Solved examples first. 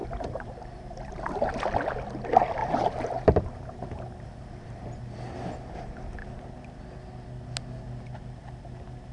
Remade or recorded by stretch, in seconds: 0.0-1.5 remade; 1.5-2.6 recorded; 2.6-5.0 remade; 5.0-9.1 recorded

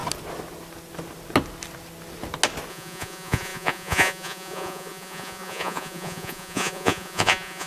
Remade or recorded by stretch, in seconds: 0.0-2.7 recorded; 2.7-7.7 remade

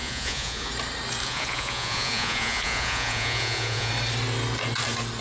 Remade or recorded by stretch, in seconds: 0.0-0.7 remade; 0.7-1.2 recorded; 1.2-3.9 remade; 3.9-5.2 recorded

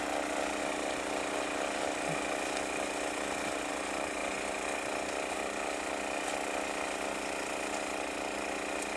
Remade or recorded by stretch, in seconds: 0.0-9.0 recorded

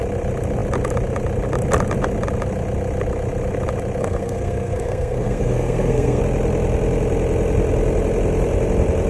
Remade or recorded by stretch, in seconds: 0.0-4.0 recorded; 4.0-6.2 remade; 6.2-9.1 recorded